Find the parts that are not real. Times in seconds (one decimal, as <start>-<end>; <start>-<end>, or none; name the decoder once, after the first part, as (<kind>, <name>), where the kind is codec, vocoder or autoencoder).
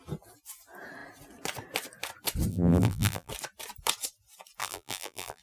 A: 2.5-3.3 (vocoder, BigVGAN v2); 4.6-5.4